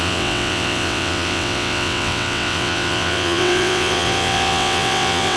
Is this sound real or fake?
fake